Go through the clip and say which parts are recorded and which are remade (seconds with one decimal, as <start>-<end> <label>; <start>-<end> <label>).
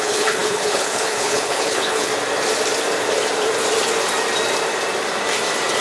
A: 0.0-2.1 remade; 2.1-5.8 recorded